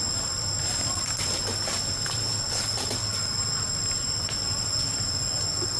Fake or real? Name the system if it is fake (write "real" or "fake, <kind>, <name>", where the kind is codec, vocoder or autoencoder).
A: real